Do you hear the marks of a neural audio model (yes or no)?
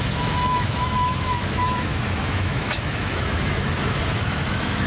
yes